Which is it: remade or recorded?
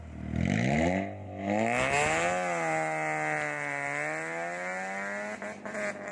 recorded